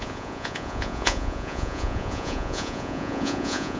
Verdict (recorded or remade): remade